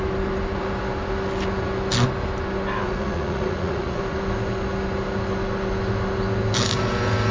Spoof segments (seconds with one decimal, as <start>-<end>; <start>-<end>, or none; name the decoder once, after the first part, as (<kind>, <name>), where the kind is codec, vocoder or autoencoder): 2.8-4.0 (vocoder, Vocos)